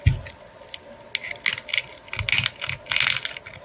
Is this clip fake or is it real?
real